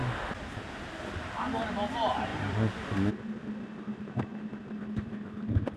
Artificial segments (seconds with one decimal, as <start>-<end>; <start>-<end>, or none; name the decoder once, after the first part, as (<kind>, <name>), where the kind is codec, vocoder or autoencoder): 2.3-3.1 (vocoder, BigVGAN v2)